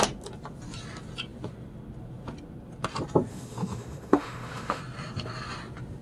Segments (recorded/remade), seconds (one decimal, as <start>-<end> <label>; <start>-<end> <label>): 0.0-3.3 recorded; 3.3-4.8 remade; 4.8-6.0 recorded